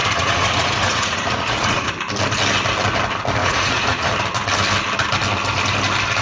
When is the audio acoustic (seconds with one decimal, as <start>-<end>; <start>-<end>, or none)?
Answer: 1.9-3.4; 4.1-6.2